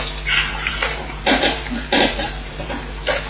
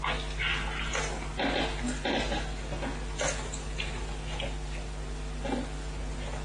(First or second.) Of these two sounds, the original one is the second